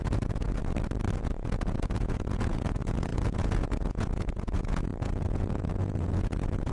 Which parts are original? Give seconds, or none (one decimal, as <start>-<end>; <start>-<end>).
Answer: 0.6-1.2